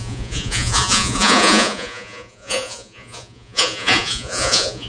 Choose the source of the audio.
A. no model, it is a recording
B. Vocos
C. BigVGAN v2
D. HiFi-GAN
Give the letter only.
B